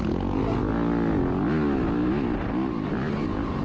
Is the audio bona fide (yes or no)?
yes